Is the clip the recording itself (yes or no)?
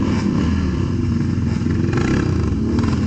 yes